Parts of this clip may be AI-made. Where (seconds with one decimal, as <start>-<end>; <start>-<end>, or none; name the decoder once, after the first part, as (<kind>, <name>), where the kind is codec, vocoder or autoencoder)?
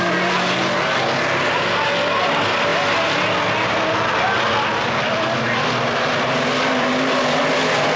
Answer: none